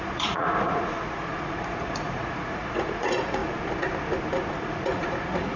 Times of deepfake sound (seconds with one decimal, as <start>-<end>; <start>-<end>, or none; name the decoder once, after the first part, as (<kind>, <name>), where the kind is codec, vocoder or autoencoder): 0.0-3.4 (vocoder, Vocos); 4.5-5.6